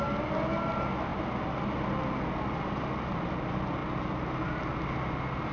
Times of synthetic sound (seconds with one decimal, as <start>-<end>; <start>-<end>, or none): none